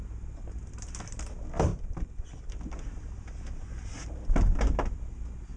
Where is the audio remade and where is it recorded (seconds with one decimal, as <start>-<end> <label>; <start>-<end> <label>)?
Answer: 0.0-1.7 recorded; 1.7-2.5 remade; 2.5-5.6 recorded

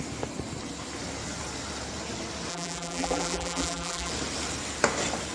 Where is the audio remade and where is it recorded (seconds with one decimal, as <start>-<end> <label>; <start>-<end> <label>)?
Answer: 0.0-2.5 recorded; 2.5-4.1 remade; 4.1-5.3 recorded

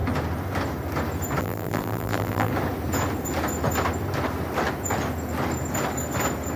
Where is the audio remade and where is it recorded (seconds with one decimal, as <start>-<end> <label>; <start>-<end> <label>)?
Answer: 0.0-1.4 recorded; 1.4-2.5 remade; 2.5-6.6 recorded

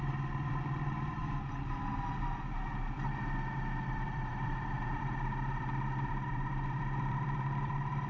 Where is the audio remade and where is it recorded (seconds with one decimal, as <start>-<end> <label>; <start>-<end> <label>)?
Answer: 0.0-1.2 remade; 1.2-3.9 recorded; 3.9-8.1 remade

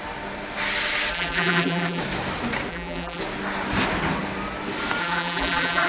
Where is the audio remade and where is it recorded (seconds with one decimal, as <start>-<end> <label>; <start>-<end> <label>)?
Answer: 0.0-1.1 recorded; 1.1-2.0 remade; 2.0-2.7 recorded; 2.7-3.2 remade; 3.2-5.0 recorded; 5.0-5.9 remade

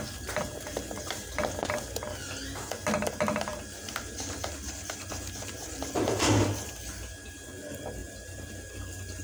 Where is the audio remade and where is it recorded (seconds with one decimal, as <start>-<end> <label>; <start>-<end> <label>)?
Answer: 0.0-8.0 recorded; 8.0-8.5 remade; 8.5-9.2 recorded

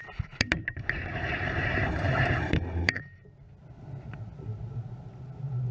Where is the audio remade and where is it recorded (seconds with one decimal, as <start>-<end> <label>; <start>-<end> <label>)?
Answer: 0.0-3.4 remade; 3.4-5.7 recorded

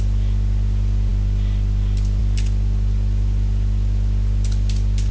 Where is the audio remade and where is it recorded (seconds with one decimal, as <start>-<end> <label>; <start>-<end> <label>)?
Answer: 0.0-5.1 recorded